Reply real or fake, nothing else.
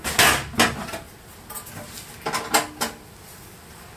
real